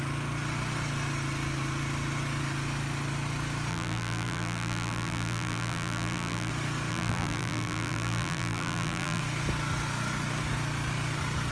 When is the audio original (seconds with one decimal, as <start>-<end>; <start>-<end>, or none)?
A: 0.0-3.7; 6.5-6.9; 9.2-11.5